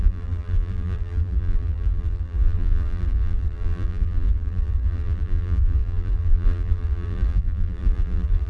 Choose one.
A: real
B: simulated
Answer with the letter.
B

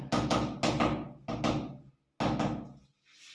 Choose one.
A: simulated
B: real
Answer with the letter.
B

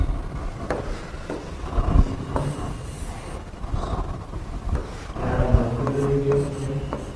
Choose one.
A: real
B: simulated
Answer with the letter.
A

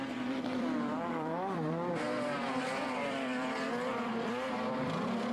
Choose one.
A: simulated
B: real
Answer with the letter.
A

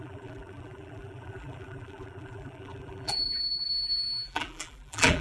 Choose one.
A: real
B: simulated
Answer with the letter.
B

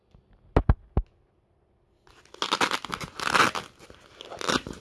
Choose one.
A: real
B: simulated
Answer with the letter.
A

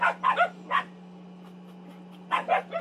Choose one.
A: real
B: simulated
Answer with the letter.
A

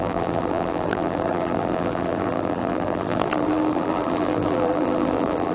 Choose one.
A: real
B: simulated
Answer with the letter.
B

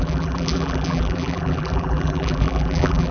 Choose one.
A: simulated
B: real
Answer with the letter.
A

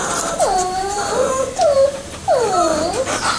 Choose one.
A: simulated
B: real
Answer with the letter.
A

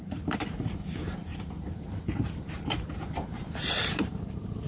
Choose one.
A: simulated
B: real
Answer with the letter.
A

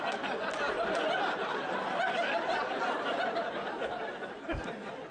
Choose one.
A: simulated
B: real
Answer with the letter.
B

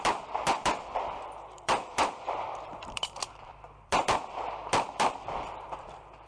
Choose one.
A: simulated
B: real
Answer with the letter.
A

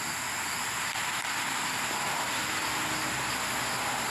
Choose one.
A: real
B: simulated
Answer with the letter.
A